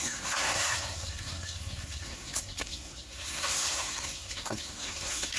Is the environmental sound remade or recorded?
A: remade